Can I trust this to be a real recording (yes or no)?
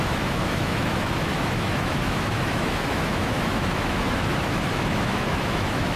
no